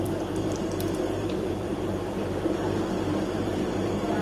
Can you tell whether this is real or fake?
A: fake